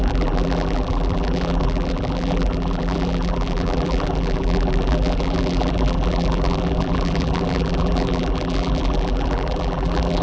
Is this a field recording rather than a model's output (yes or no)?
no